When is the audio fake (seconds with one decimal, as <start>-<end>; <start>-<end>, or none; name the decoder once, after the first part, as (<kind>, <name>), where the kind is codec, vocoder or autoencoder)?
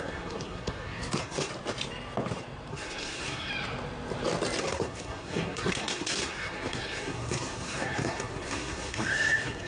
0.0-1.5 (codec, SNAC); 2.7-3.5; 4.6-9.7